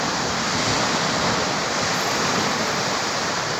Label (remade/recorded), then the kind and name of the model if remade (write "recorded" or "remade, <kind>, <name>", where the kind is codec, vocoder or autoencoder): recorded